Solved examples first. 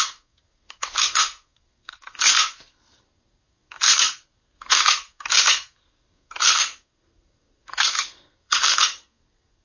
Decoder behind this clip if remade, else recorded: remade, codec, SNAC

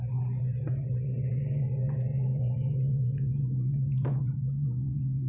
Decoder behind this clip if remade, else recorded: remade, vocoder, Vocos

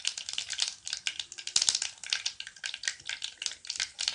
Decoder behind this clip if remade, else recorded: recorded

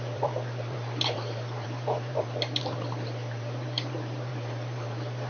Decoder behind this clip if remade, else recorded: remade, vocoder, BigVGAN v2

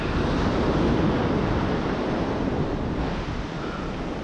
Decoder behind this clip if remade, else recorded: recorded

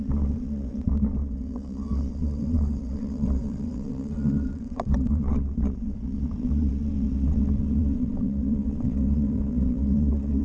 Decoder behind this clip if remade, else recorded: remade, vocoder, WaveNeXt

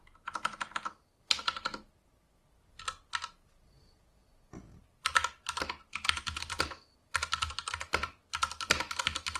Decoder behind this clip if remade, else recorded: recorded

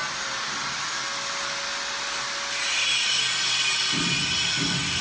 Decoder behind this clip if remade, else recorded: recorded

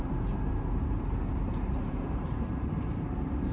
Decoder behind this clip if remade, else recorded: remade, vocoder, BigVGAN v2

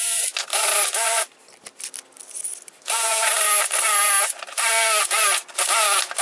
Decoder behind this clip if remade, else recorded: recorded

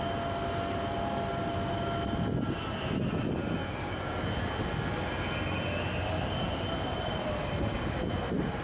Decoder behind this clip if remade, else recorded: recorded